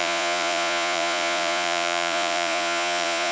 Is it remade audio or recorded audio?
remade